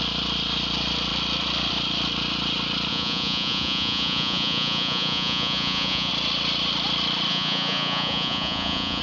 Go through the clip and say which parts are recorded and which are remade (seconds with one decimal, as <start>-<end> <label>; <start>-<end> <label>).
0.0-2.9 recorded; 2.9-6.1 remade; 6.1-7.3 recorded; 7.3-9.0 remade